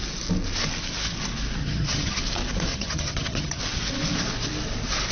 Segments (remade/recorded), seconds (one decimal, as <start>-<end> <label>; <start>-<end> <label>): 0.0-1.6 recorded; 1.6-2.2 remade; 2.2-2.7 recorded; 2.7-3.6 remade; 3.6-5.1 recorded

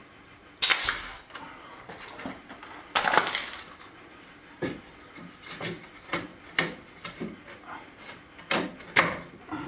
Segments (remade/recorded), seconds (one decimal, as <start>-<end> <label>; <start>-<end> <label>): 0.0-9.7 recorded

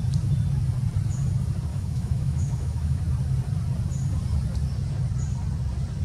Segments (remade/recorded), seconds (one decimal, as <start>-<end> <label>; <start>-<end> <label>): 0.0-1.7 recorded; 1.7-3.0 remade; 3.0-6.0 recorded

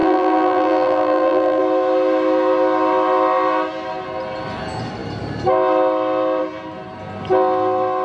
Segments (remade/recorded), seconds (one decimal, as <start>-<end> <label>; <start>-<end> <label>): 0.0-1.6 remade; 1.6-8.0 recorded

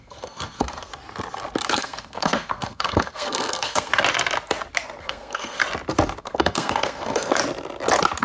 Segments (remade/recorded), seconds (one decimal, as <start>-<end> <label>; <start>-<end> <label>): 0.0-0.9 remade; 0.9-1.7 recorded; 1.7-3.9 remade; 3.9-5.0 recorded; 5.0-5.6 remade; 5.6-6.2 recorded; 6.2-7.4 remade; 7.4-8.2 recorded

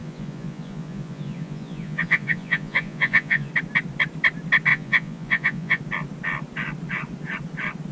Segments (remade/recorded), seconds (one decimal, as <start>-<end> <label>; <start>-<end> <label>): 0.0-3.5 remade; 3.5-4.7 recorded; 4.7-5.8 remade; 5.8-7.9 recorded

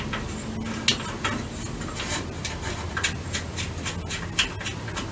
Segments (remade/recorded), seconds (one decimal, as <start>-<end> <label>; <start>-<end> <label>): 0.0-5.1 recorded